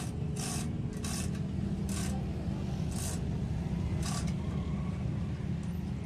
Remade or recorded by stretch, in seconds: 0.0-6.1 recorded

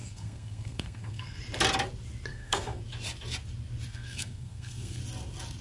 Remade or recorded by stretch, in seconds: 0.0-1.4 remade; 1.4-2.3 recorded; 2.3-2.8 remade; 2.8-3.9 recorded; 3.9-5.0 remade; 5.0-5.6 recorded

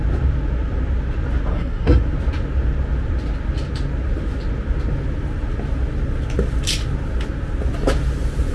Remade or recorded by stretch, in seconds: 0.0-1.5 recorded; 1.5-2.0 remade; 2.0-8.5 recorded

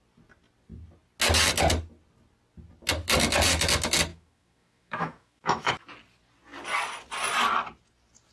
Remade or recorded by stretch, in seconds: 0.0-4.1 recorded; 4.1-5.7 remade; 5.7-8.3 recorded

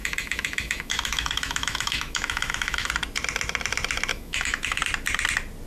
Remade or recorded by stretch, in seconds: 0.0-2.9 remade; 2.9-4.1 recorded; 4.1-4.8 remade; 4.8-5.7 recorded

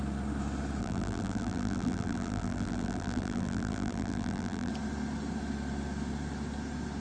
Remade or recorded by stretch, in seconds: 0.0-0.8 recorded; 0.8-4.7 remade; 4.7-7.0 recorded

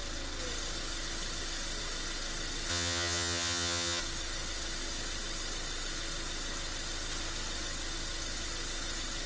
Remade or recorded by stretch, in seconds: 0.0-2.7 recorded; 2.7-4.0 remade; 4.0-9.3 recorded

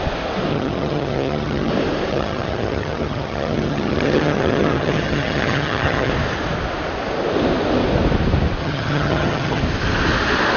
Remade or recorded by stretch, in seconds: 0.0-0.5 recorded; 0.5-1.7 remade; 1.7-2.1 recorded; 2.1-6.1 remade; 6.1-8.6 recorded; 8.6-9.6 remade; 9.6-10.6 recorded